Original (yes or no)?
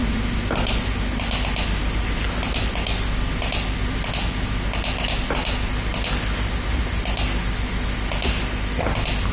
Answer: yes